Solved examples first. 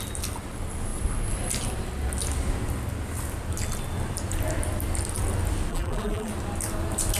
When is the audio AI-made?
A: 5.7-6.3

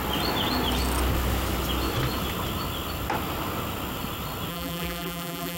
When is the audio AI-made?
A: 4.5-5.6